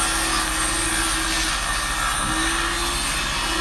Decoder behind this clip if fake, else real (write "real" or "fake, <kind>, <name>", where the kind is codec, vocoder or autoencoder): real